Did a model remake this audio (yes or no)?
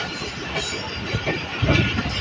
no